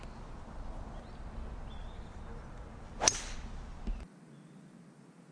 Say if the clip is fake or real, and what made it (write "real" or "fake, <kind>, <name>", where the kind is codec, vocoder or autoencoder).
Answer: real